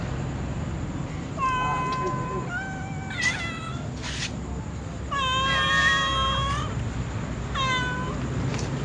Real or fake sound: real